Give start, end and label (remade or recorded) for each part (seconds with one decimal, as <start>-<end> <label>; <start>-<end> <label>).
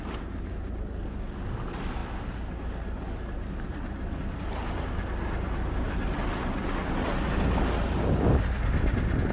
0.0-9.3 recorded